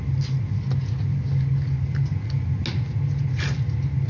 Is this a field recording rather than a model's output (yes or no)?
yes